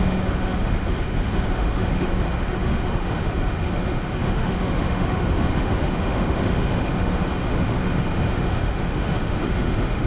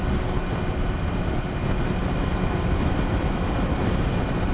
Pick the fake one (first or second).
first